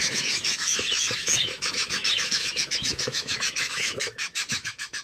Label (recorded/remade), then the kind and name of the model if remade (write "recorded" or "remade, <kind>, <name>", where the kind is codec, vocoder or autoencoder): remade, autoencoder, DAC-VAE